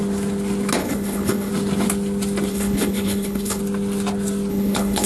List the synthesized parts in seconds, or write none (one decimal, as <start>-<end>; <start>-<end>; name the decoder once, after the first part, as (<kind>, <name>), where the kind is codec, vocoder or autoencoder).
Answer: 0.8-1.5 (codec, HILCodec); 2.5-3.6; 4.5-5.1